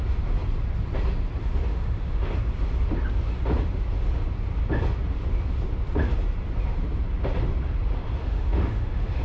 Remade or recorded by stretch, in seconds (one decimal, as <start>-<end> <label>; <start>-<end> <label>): 0.0-1.7 recorded; 1.7-2.3 remade; 2.3-8.2 recorded; 8.2-9.2 remade